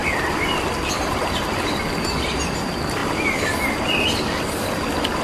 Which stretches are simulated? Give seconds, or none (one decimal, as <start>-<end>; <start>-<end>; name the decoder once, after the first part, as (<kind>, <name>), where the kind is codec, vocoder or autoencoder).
none